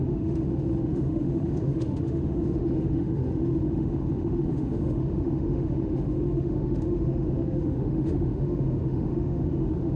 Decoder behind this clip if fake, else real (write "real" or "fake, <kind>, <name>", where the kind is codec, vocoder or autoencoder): fake, autoencoder, DAC-VAE